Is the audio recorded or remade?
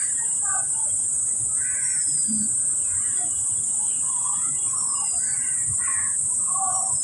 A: recorded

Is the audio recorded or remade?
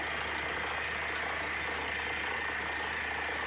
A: recorded